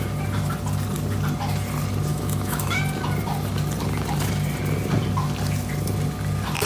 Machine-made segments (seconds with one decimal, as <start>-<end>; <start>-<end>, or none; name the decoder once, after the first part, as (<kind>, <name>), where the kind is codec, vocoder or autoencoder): 2.1-2.8 (autoencoder, DAC-VAE)